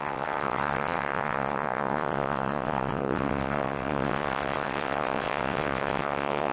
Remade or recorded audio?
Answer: remade